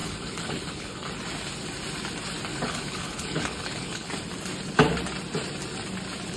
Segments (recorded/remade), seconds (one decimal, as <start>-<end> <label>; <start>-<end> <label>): 0.0-1.1 remade; 1.1-2.5 recorded; 2.5-4.1 remade; 4.1-6.4 recorded